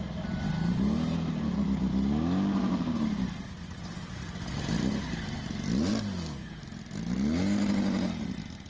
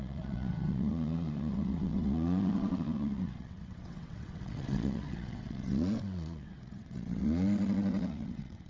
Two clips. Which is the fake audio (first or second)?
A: second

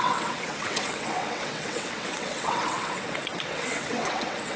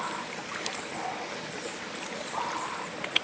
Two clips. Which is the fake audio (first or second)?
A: first